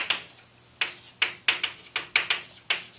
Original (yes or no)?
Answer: yes